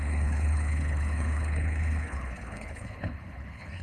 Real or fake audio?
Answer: fake